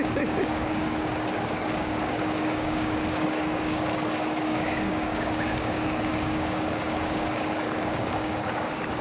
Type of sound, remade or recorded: remade